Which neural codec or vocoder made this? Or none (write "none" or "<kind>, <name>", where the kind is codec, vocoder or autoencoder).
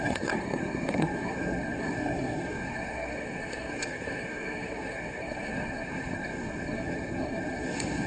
codec, SNAC